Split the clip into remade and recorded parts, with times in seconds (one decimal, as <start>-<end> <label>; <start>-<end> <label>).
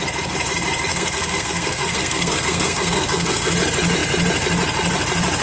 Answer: 0.0-0.9 recorded; 0.9-3.5 remade; 3.5-5.4 recorded